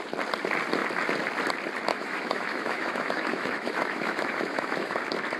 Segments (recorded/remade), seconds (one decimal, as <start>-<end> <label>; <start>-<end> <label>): 0.0-1.9 recorded; 1.9-5.0 remade; 5.0-5.4 recorded